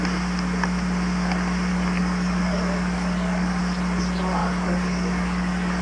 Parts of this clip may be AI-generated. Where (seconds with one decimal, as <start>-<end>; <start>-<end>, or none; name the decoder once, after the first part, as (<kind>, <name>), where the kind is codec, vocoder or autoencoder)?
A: 1.7-3.6 (codec, DAC); 4.4-5.8